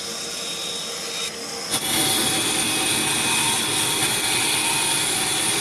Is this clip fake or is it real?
real